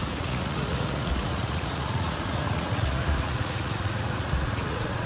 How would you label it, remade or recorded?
remade